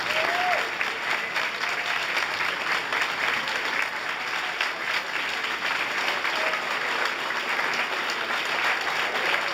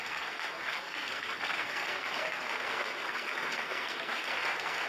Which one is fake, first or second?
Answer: second